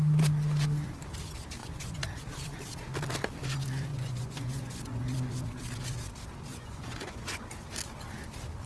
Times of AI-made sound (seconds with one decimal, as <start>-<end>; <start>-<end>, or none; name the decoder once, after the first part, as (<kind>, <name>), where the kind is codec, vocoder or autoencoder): 1.6-2.2 (vocoder, Vocos); 3.9-5.0; 6.5-7.4